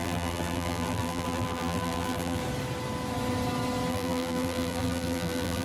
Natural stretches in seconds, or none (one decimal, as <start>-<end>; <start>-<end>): 2.4-3.9